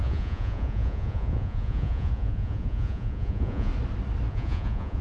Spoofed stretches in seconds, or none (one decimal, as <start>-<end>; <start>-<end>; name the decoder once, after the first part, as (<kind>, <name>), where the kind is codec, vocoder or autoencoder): 0.0-3.7 (vocoder, Vocos); 4.3-5.0